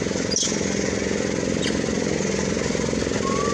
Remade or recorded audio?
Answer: recorded